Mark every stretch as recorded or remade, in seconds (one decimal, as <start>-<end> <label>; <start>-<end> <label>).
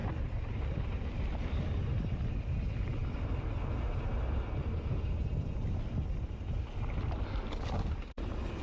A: 0.0-8.6 recorded